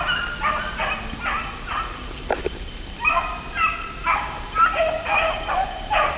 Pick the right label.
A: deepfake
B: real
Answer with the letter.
B